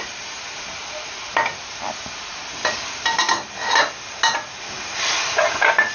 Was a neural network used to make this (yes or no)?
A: no